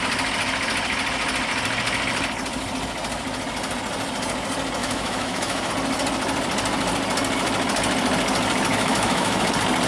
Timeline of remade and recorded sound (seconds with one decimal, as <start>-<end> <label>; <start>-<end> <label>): 0.0-4.8 recorded; 4.8-5.7 remade; 5.7-8.7 recorded; 8.7-9.5 remade; 9.5-9.9 recorded